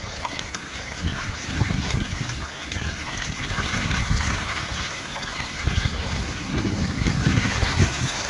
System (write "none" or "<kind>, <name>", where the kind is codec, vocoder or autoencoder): codec, SNAC